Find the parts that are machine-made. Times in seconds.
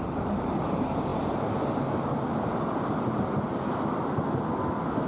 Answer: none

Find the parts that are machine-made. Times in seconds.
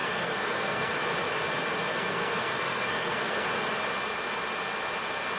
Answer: 0.0-0.9 (codec, SNAC); 1.9-3.5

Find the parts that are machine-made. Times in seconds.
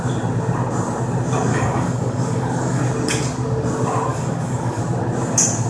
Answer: 1.5-2.8 (codec, DAC); 4.1-4.8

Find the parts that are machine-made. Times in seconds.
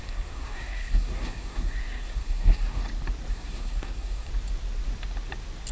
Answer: 0.0-2.8 (codec, SNAC); 3.3-4.3